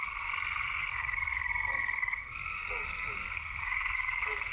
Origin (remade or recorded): remade